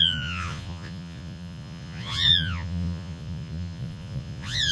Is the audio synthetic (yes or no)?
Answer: yes